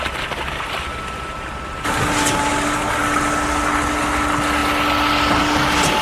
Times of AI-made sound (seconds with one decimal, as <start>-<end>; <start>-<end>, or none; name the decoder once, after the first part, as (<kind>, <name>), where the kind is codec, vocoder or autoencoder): none